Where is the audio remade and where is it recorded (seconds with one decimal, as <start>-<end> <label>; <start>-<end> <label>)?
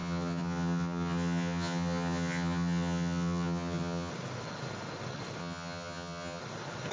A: 0.0-4.1 remade; 4.1-5.4 recorded; 5.4-6.4 remade; 6.4-6.9 recorded